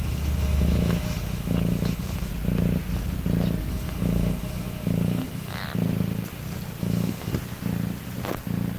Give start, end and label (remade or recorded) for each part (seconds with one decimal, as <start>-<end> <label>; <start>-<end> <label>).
0.0-2.3 remade; 2.3-3.7 recorded; 3.7-5.6 remade; 5.6-6.8 recorded; 6.8-7.3 remade; 7.3-8.8 recorded